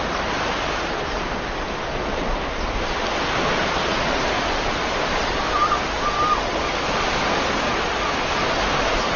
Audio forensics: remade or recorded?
recorded